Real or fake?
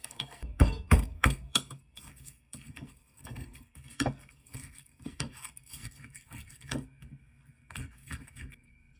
fake